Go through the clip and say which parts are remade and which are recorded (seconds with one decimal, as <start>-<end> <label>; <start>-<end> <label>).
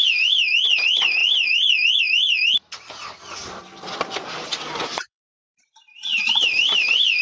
0.0-3.6 remade; 3.6-4.2 recorded; 4.2-7.2 remade